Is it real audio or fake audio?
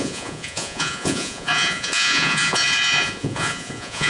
fake